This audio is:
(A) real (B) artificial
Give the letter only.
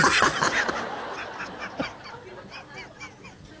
A